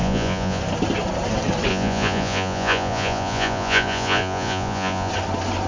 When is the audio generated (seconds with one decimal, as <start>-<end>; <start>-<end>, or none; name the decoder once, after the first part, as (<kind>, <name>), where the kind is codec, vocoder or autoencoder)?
0.0-0.6 (vocoder, Vocos); 1.7-5.1